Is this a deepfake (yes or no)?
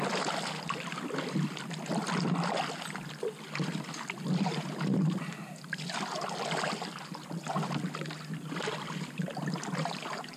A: no